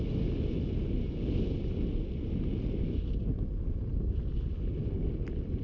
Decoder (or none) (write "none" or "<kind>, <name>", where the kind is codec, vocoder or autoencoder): none